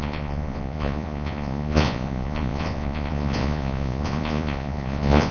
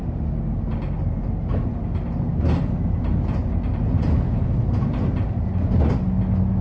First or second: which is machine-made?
first